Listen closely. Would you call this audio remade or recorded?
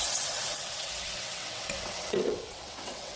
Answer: remade